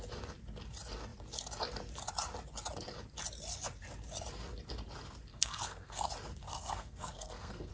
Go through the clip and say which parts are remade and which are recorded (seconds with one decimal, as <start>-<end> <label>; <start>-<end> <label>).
0.0-5.3 recorded; 5.3-6.1 remade; 6.1-6.5 recorded; 6.5-7.7 remade